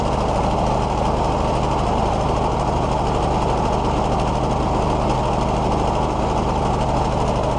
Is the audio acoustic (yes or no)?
yes